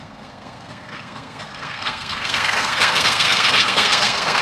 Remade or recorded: remade